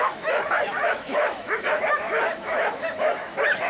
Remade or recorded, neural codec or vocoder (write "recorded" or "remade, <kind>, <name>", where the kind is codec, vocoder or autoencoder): remade, autoencoder, DAC-VAE